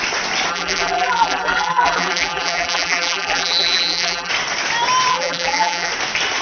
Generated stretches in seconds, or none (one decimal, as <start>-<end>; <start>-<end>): 0.5-4.3; 5.1-5.9